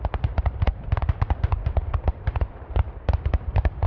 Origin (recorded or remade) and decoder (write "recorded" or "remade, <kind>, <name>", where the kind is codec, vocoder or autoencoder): remade, vocoder, BigVGAN v2